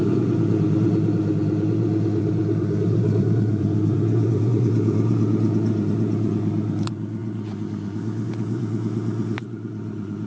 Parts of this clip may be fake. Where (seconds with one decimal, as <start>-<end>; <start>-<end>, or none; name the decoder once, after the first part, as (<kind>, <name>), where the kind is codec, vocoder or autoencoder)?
0.0-10.3 (vocoder, Vocos)